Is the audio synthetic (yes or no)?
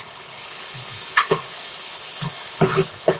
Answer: yes